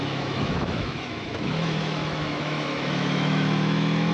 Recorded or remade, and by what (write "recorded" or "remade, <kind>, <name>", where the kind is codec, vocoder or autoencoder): remade, autoencoder, DAC-VAE